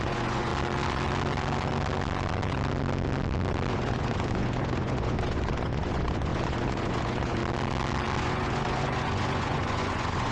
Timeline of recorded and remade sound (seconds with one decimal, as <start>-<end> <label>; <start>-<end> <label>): 0.0-0.5 remade; 0.5-3.7 recorded; 3.7-7.4 remade; 7.4-8.2 recorded; 8.2-10.3 remade

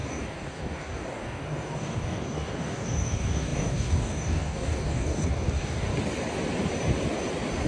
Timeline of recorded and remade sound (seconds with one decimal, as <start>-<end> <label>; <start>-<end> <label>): 0.0-5.9 remade; 5.9-7.7 recorded

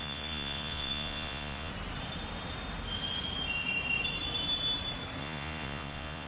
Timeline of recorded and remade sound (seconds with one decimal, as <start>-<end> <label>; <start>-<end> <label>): 0.0-1.7 remade; 1.7-5.2 recorded; 5.2-6.3 remade

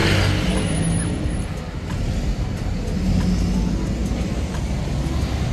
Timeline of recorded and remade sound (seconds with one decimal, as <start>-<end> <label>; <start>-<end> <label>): 0.0-4.0 recorded; 4.0-5.5 remade

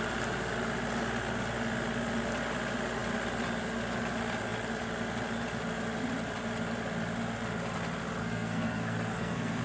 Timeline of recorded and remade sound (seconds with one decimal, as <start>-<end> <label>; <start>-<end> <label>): 0.0-8.2 recorded; 8.2-9.6 remade

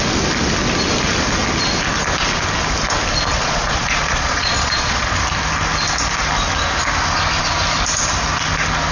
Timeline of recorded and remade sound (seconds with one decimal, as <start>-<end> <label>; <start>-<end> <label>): 0.0-3.3 recorded; 3.3-5.2 remade; 5.2-8.9 recorded

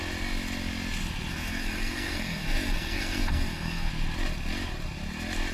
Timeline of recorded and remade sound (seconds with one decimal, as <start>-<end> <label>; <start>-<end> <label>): 0.0-1.3 recorded; 1.3-3.9 remade; 3.9-5.5 recorded

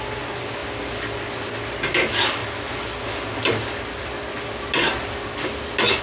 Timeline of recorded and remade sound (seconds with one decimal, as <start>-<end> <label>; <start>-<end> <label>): 0.0-6.0 recorded